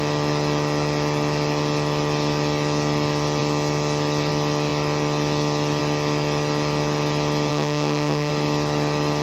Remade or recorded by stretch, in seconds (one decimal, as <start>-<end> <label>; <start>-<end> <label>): 0.0-7.5 recorded; 7.5-8.3 remade; 8.3-9.2 recorded